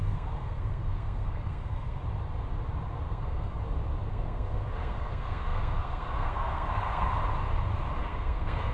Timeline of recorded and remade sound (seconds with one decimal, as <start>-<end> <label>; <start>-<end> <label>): 0.0-2.0 remade; 2.0-3.1 recorded; 3.1-3.6 remade; 3.6-4.1 recorded; 4.1-7.1 remade; 7.1-8.0 recorded; 8.0-8.7 remade